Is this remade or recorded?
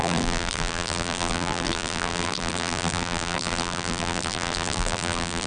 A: remade